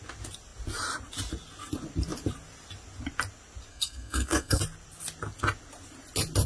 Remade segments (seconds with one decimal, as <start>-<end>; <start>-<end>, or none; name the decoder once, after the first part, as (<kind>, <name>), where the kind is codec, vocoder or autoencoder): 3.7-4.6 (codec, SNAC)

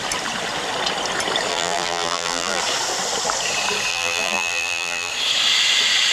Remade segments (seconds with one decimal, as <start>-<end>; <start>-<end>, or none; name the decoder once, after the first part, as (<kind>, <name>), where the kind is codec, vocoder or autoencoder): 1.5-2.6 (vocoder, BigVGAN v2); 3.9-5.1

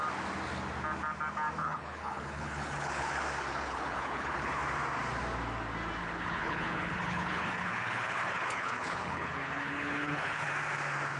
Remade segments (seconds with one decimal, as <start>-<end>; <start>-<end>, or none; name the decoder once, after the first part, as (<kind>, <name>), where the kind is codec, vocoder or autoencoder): 1.6-3.1 (codec, HILCodec); 3.5-4.6; 6.0-10.5

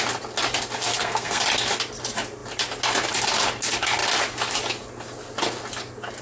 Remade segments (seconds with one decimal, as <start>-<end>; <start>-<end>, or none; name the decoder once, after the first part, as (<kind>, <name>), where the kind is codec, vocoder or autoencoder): 0.9-1.4 (codec, SNAC)

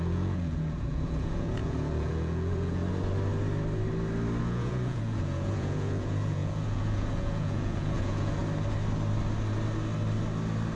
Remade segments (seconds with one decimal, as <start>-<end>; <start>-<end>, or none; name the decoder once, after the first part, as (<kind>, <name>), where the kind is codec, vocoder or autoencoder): 0.0-2.8 (vocoder, Vocos); 4.4-8.4

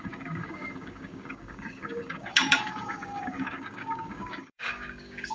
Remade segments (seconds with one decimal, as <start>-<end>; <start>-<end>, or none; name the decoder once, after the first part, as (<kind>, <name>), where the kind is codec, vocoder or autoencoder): 0.0-5.3 (codec, DAC)